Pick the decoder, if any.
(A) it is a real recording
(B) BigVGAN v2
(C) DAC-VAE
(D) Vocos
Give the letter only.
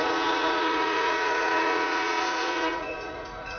D